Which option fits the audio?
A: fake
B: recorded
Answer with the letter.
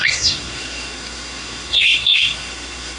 A